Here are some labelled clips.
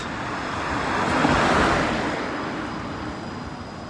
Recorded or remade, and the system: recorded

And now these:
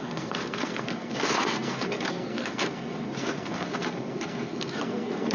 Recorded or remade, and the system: remade, codec, SNAC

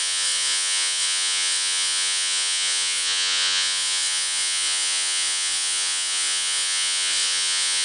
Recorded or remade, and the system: remade, vocoder, Vocos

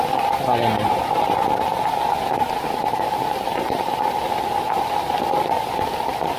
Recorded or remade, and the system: recorded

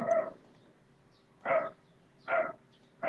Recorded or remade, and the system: recorded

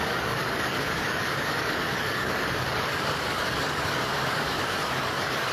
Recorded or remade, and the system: remade, codec, DAC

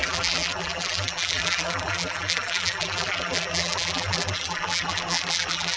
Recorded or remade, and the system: remade, vocoder, BigVGAN v2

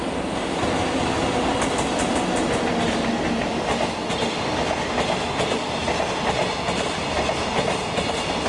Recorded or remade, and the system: recorded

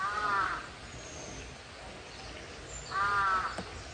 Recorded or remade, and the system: recorded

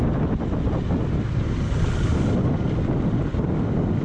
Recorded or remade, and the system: recorded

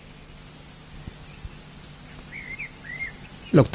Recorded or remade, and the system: recorded